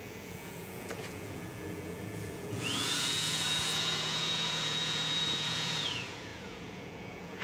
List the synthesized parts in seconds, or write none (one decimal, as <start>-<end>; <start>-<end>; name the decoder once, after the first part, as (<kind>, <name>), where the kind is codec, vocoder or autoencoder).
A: 0.0-7.4 (vocoder, Vocos)